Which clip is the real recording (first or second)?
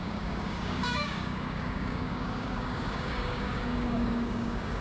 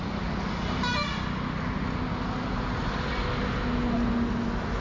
second